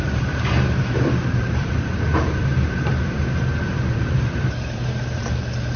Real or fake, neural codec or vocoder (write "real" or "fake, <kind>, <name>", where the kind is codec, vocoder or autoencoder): fake, vocoder, BigVGAN v2